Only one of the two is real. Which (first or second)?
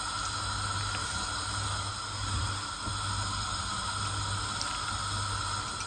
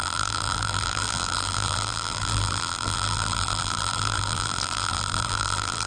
first